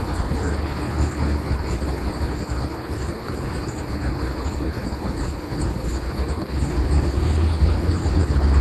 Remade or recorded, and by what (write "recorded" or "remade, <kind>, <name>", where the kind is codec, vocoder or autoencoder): remade, codec, HILCodec